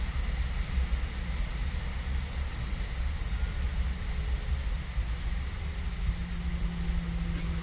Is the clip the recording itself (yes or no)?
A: yes